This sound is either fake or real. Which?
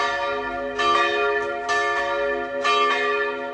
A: real